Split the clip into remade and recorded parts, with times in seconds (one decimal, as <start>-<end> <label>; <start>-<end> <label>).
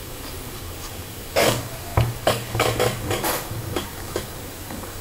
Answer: 0.0-5.0 remade